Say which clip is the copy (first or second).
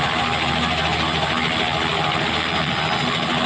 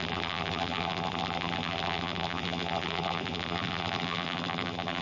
second